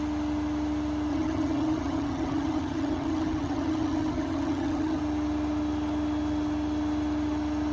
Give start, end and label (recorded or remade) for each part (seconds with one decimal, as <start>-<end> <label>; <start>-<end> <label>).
0.0-1.1 recorded; 1.1-5.0 remade; 5.0-7.7 recorded

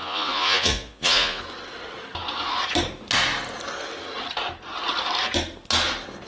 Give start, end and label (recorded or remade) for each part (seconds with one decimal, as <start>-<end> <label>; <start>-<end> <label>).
0.0-1.4 remade; 1.4-6.3 recorded

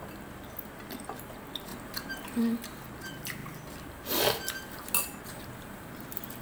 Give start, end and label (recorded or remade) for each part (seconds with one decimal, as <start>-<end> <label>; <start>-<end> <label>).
0.0-6.4 recorded